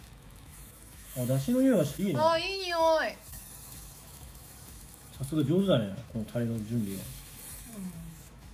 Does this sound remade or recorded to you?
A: remade